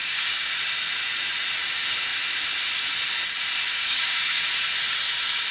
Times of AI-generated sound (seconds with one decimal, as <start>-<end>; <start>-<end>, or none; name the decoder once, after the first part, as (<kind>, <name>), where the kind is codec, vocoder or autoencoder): 0.0-0.5 (codec, DAC); 3.7-4.4